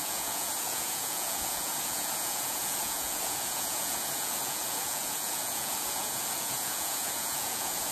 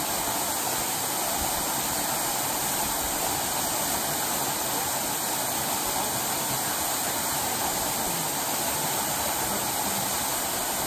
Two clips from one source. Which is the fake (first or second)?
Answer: first